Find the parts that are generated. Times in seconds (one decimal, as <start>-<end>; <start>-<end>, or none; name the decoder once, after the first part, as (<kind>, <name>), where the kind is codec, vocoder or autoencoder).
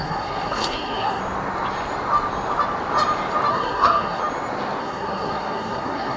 0.0-1.2 (codec, SNAC); 3.5-4.2; 4.8-6.2